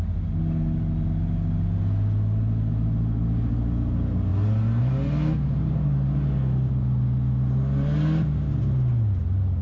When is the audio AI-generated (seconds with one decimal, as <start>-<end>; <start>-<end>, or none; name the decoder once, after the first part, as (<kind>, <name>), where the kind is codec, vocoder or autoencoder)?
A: none